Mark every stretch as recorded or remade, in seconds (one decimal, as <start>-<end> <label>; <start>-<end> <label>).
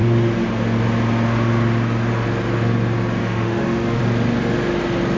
0.0-3.2 recorded; 3.2-4.0 remade; 4.0-5.2 recorded